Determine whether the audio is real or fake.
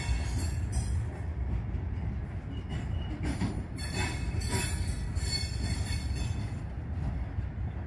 real